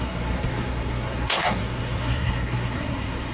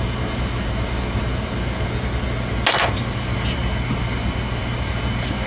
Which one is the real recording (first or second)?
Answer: second